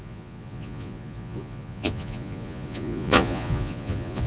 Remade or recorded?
remade